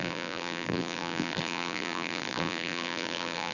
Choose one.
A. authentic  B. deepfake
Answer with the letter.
B